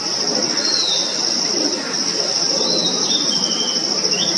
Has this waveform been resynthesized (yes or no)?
no